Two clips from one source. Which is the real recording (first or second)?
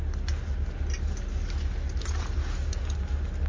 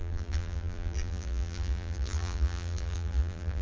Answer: first